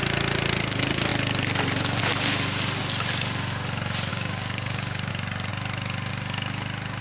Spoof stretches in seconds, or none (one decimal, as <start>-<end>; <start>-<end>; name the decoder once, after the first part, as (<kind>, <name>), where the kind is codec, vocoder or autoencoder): 4.1-5.1 (codec, DAC)